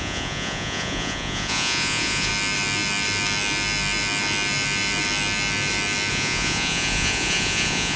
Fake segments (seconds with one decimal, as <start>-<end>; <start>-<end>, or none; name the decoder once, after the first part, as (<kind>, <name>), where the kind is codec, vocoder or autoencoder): 0.0-2.3 (vocoder, Vocos); 6.1-8.0